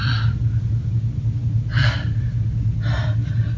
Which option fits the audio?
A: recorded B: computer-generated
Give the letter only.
A